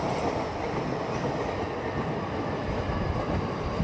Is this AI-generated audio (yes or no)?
no